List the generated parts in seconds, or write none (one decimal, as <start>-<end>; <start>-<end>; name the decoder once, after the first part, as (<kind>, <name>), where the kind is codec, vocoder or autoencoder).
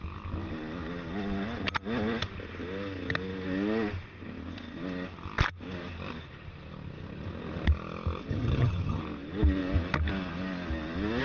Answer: 8.3-9.0 (vocoder, HiFi-GAN)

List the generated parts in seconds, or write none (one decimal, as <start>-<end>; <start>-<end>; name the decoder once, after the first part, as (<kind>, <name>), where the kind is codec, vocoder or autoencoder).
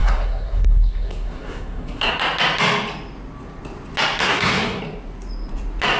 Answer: 0.0-2.1 (codec, SNAC); 4.2-4.8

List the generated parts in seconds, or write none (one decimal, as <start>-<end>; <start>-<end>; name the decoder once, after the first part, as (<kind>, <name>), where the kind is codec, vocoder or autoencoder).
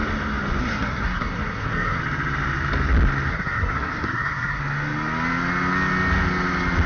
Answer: 0.6-2.0 (codec, SNAC); 3.3-4.6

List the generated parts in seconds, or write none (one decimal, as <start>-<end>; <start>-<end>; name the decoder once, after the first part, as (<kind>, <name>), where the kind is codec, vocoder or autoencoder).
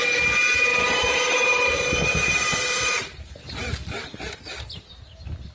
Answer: 0.7-3.1 (vocoder, BigVGAN v2)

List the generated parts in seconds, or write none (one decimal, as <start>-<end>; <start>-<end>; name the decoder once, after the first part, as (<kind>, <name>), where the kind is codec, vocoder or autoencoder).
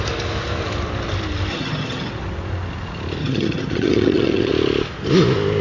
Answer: 1.5-2.1 (vocoder, HiFi-GAN); 3.2-4.5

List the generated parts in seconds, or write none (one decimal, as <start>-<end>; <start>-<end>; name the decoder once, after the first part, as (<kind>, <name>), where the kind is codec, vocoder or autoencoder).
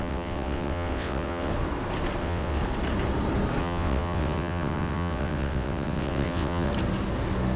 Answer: 0.0-1.5 (vocoder, WaveNeXt); 2.2-2.6; 3.6-6.7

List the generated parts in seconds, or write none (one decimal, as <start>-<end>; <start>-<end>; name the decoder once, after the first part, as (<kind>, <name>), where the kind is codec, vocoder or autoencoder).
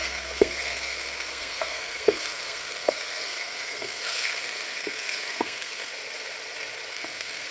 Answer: 0.0-5.9 (codec, SNAC); 6.9-7.5